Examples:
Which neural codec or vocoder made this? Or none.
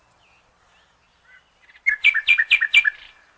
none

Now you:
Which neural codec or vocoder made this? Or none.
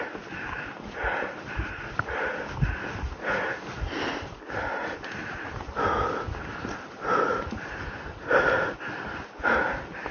none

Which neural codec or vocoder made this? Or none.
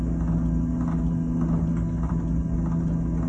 none